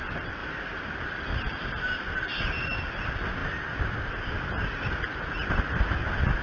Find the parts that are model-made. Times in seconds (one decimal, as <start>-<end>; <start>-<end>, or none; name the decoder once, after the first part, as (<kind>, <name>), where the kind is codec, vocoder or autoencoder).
0.4-1.0 (vocoder, BigVGAN v2)